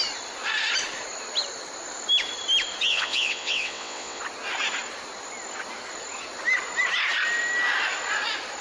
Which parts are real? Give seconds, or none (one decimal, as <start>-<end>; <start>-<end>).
0.0-2.9; 4.2-8.6